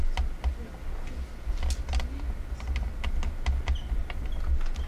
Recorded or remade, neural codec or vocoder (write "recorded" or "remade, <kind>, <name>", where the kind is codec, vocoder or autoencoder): recorded